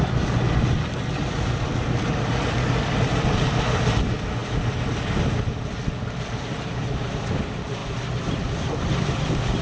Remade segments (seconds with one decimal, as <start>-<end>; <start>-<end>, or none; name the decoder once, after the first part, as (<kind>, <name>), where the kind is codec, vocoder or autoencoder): none